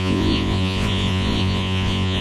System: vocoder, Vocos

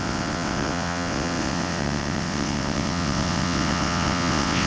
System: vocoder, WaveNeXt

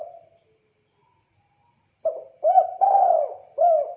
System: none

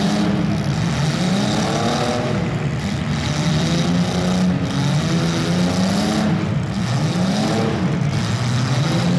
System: none